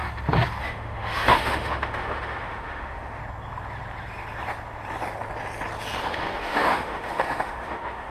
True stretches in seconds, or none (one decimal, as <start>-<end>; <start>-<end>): 0.0-0.6; 3.2-6.0